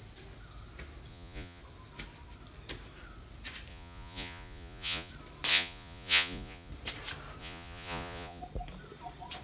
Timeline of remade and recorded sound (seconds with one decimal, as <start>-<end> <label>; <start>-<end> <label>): 0.0-1.1 recorded; 1.1-1.6 remade; 1.6-3.7 recorded; 3.7-5.1 remade; 5.1-5.5 recorded; 5.5-6.7 remade; 6.7-7.4 recorded; 7.4-8.4 remade; 8.4-9.4 recorded